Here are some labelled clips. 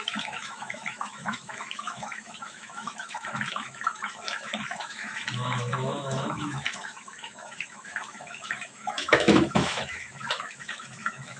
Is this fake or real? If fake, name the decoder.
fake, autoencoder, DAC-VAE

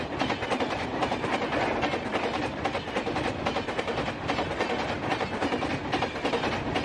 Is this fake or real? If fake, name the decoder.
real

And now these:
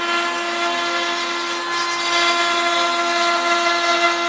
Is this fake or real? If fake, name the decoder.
real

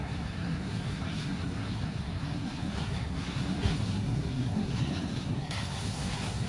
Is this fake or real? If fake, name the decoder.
fake, codec, SNAC